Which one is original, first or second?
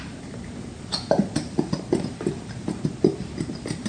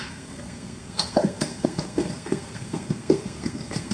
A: first